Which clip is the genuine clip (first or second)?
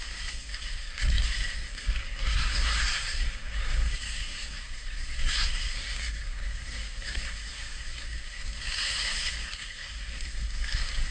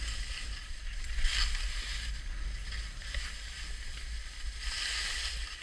second